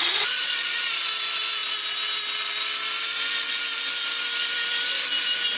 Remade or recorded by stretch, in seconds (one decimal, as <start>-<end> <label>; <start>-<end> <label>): 0.0-1.0 remade; 1.0-5.6 recorded